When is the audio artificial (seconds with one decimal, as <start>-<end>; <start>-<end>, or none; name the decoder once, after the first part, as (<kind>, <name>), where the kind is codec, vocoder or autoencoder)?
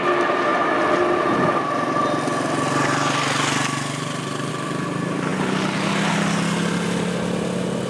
none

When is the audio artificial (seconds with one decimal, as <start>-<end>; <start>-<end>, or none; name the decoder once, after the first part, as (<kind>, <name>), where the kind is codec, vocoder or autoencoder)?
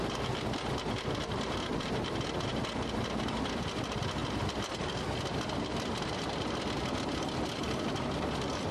0.0-8.7 (vocoder, BigVGAN v2)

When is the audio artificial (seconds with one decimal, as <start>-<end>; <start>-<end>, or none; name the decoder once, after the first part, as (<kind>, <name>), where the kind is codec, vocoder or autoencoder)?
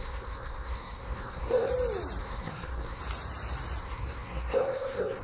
0.0-1.7 (codec, SNAC); 2.2-3.0; 3.8-5.2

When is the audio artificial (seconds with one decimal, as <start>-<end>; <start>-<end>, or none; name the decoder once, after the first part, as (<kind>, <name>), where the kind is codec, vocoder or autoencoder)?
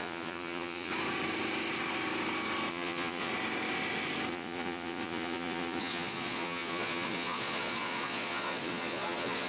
0.0-0.9 (vocoder, Vocos); 2.7-3.3; 4.3-9.5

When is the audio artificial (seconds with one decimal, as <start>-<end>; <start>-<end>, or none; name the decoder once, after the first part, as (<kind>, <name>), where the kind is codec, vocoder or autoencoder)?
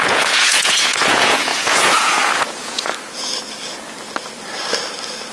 0.0-2.9 (vocoder, Vocos)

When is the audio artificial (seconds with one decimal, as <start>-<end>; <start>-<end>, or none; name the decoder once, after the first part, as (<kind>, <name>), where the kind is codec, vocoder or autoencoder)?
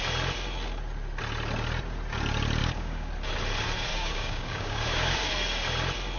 2.6-3.1 (codec, DAC); 3.9-5.3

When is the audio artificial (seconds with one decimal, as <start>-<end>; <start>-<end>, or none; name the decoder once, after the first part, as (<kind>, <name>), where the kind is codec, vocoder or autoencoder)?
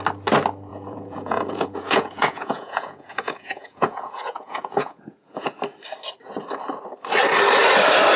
0.7-5.6 (vocoder, Vocos)